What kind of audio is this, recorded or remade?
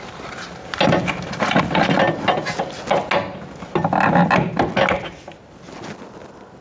recorded